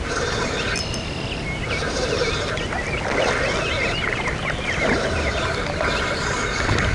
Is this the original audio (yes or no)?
yes